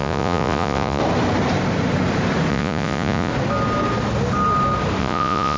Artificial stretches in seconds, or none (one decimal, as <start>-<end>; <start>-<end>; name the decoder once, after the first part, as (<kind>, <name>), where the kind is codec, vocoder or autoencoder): 0.0-1.0 (vocoder, Vocos); 2.5-3.3; 5.0-5.6